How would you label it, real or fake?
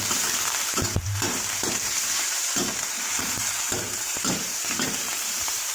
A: fake